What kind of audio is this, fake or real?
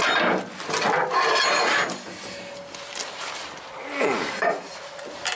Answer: real